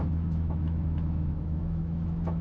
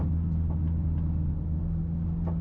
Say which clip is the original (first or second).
second